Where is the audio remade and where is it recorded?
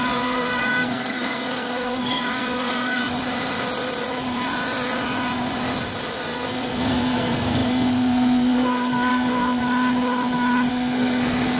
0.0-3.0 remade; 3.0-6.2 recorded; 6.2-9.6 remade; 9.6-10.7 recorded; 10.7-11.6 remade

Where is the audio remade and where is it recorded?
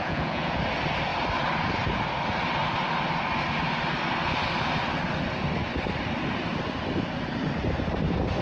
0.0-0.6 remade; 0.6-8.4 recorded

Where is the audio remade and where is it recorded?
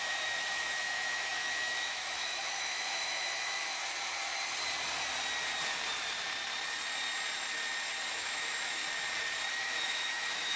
0.0-3.8 remade; 3.8-8.1 recorded; 8.1-8.8 remade; 8.8-9.5 recorded; 9.5-10.6 remade